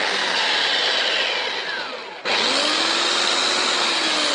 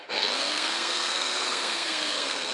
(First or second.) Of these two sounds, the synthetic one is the second